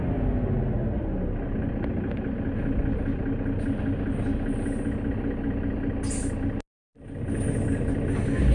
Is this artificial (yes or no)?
no